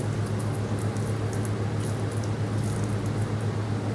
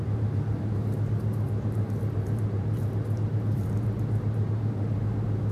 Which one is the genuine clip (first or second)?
first